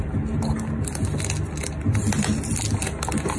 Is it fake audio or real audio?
real